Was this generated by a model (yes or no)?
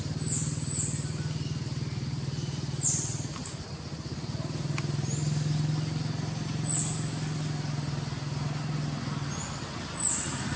no